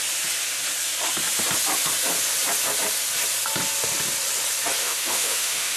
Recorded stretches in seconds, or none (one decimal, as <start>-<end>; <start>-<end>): 0.0-4.8